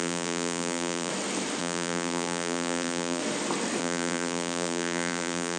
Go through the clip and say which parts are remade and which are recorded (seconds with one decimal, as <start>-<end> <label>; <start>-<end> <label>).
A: 0.0-1.1 remade; 1.1-1.6 recorded; 1.6-3.2 remade; 3.2-3.8 recorded; 3.8-5.6 remade